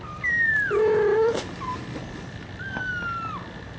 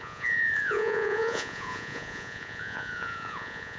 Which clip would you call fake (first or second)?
second